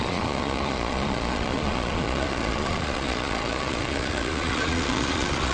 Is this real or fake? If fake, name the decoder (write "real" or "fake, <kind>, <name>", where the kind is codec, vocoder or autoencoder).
fake, vocoder, Vocos